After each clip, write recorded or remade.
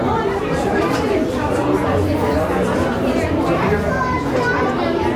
recorded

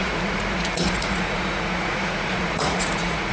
remade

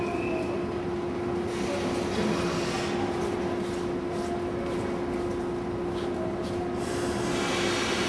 recorded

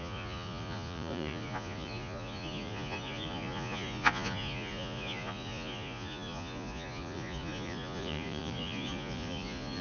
remade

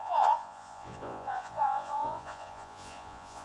remade